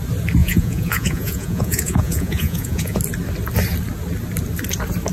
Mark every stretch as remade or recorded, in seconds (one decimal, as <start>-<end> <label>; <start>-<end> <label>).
0.0-0.4 recorded; 0.4-3.0 remade; 3.0-5.1 recorded